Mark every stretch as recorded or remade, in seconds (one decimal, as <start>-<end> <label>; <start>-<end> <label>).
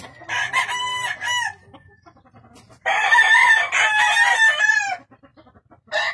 0.0-0.9 remade; 0.9-4.6 recorded; 4.6-6.1 remade